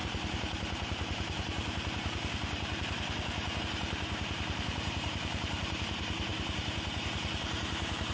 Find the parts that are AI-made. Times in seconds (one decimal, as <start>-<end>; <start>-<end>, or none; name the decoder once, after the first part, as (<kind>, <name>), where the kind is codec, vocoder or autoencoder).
0.0-8.1 (vocoder, BigVGAN v2)